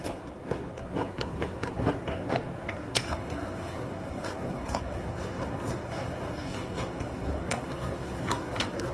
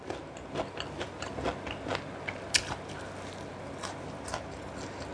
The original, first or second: second